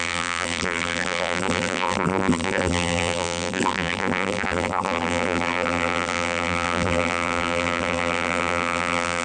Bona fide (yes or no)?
no